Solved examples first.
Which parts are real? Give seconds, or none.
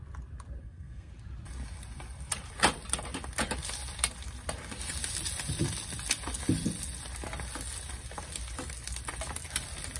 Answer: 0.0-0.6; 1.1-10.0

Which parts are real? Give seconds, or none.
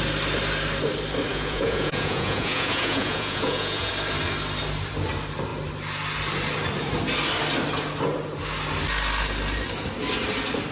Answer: 0.0-1.3; 3.9-10.7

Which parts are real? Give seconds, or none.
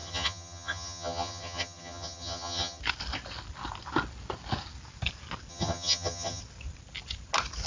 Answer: 2.8-5.5; 6.4-7.7